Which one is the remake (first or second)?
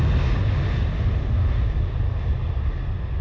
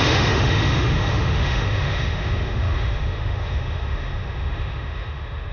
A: second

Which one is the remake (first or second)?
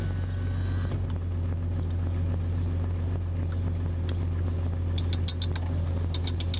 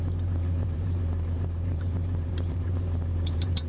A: second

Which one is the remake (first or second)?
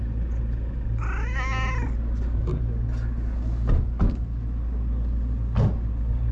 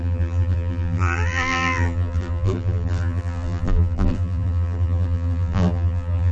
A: second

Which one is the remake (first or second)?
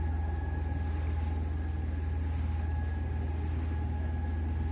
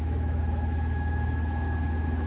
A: second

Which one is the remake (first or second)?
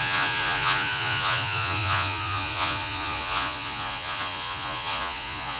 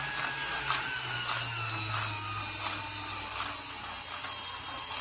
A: first